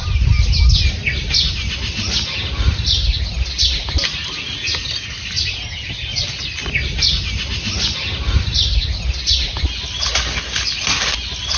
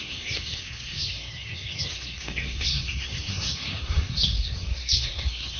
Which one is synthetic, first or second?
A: second